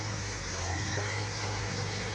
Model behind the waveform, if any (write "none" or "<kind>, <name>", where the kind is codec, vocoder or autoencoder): codec, SNAC